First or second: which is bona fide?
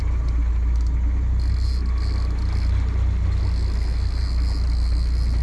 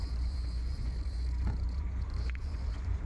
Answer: first